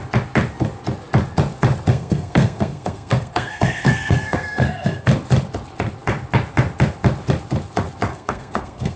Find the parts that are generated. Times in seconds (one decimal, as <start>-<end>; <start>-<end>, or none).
1.9-5.1; 8.1-9.0